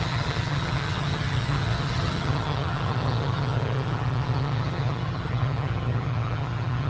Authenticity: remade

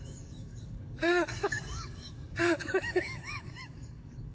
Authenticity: remade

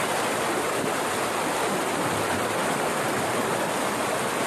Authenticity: recorded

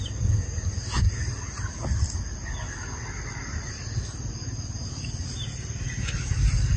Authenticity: recorded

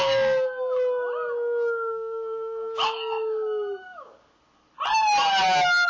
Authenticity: recorded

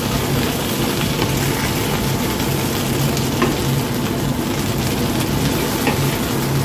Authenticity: recorded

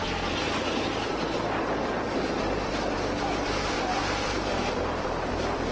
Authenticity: recorded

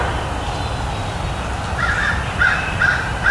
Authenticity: recorded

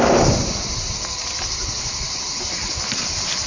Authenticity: recorded